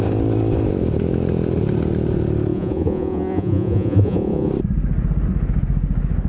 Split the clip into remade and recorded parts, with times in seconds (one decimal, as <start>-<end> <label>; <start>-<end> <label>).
0.0-2.5 recorded; 2.5-4.5 remade; 4.5-6.3 recorded